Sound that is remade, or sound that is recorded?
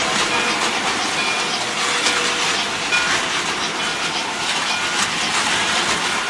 recorded